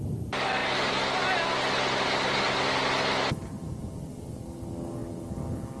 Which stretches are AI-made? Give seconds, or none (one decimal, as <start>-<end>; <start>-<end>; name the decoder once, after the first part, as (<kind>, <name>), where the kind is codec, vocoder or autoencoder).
none